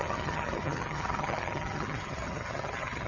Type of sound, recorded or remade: remade